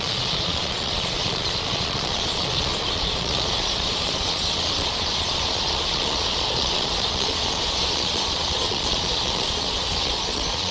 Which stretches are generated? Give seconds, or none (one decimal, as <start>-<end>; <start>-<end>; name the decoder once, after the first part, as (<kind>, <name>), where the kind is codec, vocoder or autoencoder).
0.0-10.7 (vocoder, Vocos)